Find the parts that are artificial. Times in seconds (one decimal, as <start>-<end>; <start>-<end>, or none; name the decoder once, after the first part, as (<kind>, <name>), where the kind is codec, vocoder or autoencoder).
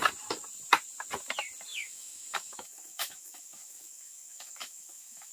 1.7-5.3 (autoencoder, DAC-VAE)